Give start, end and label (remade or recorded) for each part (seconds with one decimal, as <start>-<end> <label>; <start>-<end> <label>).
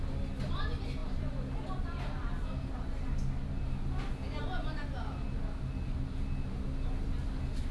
0.0-7.7 recorded